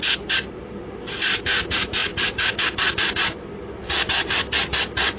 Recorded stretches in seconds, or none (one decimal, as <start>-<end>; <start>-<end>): 0.0-5.2